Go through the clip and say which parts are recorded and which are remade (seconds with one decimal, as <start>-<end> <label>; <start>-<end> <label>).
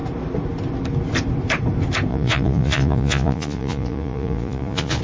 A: 0.0-2.1 recorded; 2.1-5.0 remade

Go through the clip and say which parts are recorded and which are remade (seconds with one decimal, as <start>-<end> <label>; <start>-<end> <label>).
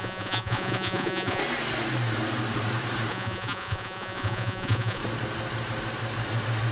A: 0.0-1.4 remade; 1.4-3.1 recorded; 3.1-5.0 remade; 5.0-6.7 recorded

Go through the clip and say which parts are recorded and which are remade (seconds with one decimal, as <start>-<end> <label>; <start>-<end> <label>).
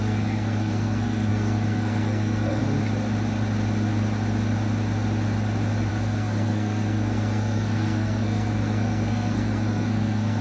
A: 0.0-2.6 remade; 2.6-5.9 recorded; 5.9-10.4 remade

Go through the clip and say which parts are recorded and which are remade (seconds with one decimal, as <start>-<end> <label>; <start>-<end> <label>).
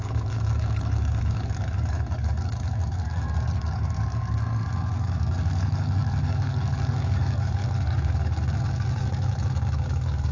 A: 0.0-10.3 remade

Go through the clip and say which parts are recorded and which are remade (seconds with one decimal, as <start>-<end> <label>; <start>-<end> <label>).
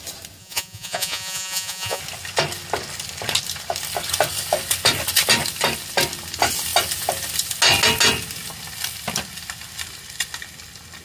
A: 0.0-0.4 recorded; 0.4-2.0 remade; 2.0-11.0 recorded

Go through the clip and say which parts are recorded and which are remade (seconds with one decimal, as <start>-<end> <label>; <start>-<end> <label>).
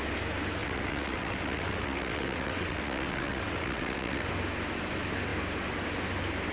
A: 0.0-0.6 recorded; 0.6-4.3 remade; 4.3-6.5 recorded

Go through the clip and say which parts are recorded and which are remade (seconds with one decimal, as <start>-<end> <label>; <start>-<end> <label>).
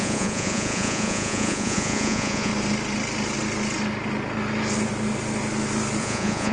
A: 0.0-2.5 remade; 2.5-6.0 recorded; 6.0-6.5 remade